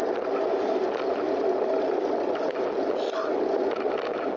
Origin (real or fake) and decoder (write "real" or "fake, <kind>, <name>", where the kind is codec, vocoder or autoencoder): real